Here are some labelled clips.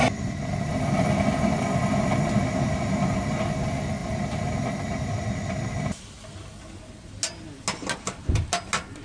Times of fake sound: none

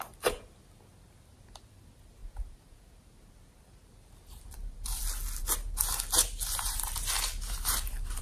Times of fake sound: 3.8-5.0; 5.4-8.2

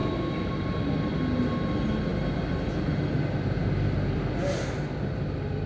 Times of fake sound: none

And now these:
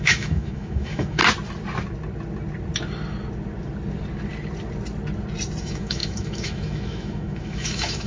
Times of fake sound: 0.0-1.2; 5.6-8.1